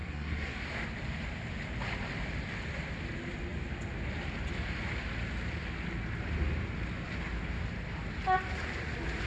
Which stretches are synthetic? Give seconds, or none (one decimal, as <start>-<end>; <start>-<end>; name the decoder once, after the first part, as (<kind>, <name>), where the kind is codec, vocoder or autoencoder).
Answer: 0.0-0.6 (codec, SNAC)